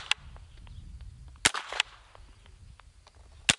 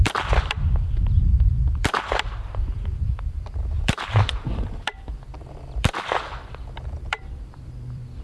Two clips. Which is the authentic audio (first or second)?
first